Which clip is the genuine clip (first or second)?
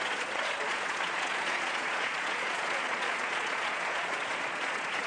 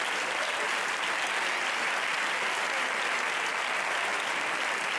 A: second